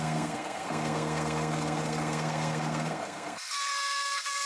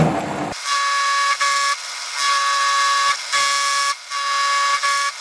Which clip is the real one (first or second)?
second